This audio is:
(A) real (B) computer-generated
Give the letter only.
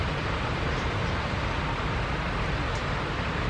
A